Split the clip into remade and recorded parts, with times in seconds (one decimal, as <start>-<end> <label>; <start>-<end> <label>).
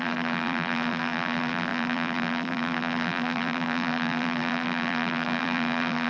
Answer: 0.0-6.1 remade